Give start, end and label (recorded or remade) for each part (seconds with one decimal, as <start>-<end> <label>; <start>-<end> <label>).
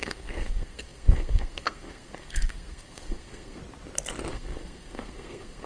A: 0.0-3.6 remade; 3.6-4.3 recorded; 4.3-5.7 remade